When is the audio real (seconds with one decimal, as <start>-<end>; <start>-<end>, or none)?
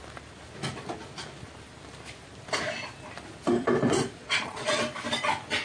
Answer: 0.0-4.2; 4.8-5.6